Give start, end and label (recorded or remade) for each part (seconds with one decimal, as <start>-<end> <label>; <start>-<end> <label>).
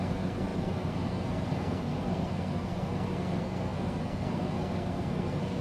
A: 0.0-5.6 remade